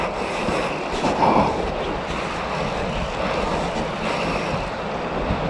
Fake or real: real